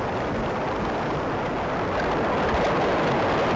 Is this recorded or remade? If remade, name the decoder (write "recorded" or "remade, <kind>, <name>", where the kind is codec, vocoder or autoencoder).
recorded